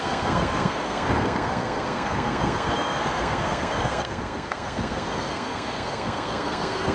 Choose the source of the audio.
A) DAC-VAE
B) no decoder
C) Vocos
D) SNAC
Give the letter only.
D